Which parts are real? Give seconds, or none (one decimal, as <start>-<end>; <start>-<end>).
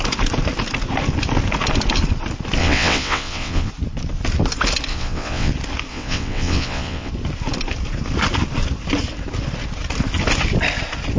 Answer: 0.0-2.6; 3.7-4.9; 5.5-5.9; 7.1-11.2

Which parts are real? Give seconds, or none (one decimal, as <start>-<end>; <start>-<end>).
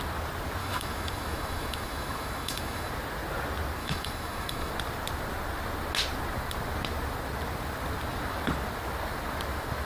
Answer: 0.0-0.6; 2.9-3.8; 4.7-9.9